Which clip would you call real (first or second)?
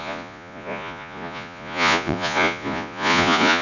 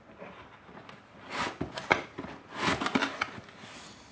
second